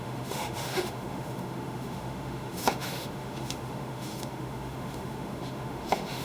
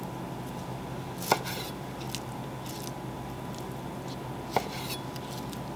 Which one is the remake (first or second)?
first